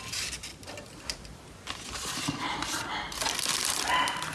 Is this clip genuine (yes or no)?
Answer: yes